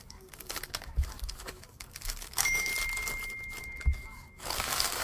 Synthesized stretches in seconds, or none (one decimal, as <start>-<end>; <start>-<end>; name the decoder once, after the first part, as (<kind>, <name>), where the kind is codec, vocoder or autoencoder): 0.0-2.7 (codec, DAC); 3.6-5.0